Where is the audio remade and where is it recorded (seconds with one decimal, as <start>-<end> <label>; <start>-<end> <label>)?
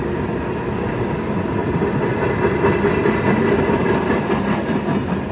0.0-5.3 recorded